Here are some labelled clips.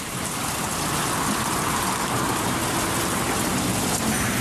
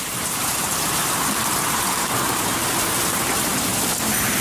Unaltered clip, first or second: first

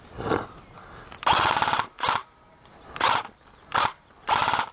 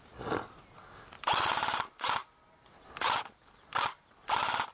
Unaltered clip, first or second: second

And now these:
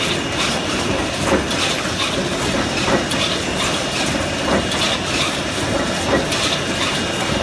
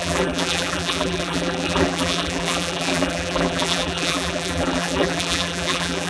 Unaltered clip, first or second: first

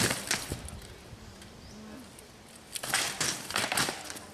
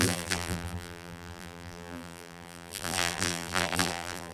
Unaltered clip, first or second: first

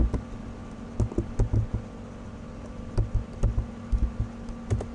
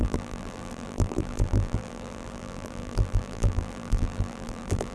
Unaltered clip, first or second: first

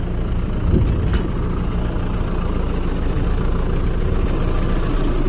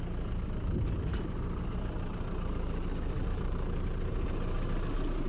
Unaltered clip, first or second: first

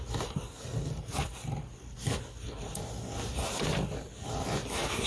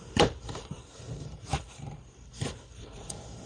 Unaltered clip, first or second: first